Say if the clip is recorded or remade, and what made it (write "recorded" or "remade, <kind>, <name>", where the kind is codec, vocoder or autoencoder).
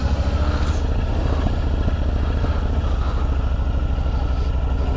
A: recorded